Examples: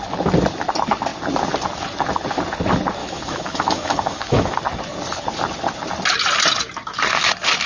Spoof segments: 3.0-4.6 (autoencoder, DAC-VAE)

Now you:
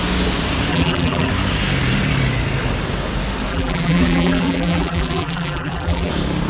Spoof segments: 0.7-1.3 (vocoder, BigVGAN v2); 3.5-6.1

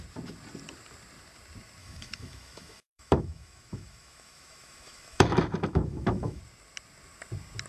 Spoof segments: 1.8-6.4 (autoencoder, DAC-VAE)